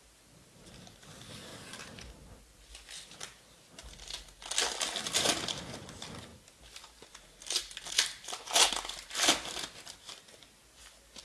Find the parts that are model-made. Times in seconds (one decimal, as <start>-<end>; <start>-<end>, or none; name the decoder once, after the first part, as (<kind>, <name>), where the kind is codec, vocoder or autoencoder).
none